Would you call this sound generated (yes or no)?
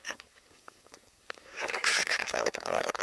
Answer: yes